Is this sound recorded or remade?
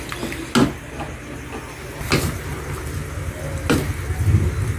recorded